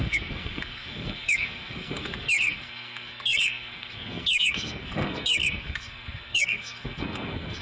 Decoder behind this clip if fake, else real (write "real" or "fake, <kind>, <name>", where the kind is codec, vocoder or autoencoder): fake, codec, SNAC